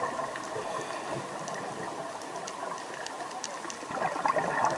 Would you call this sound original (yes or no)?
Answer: yes